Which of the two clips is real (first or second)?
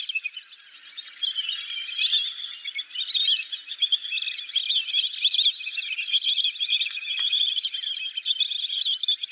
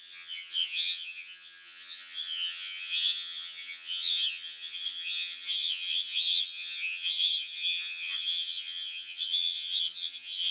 first